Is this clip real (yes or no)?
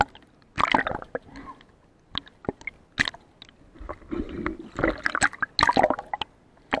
yes